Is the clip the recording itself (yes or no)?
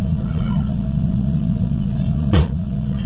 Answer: no